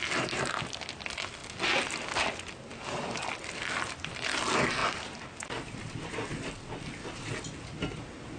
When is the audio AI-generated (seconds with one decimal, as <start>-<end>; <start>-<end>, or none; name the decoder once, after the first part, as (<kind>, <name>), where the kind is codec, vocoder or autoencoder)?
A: none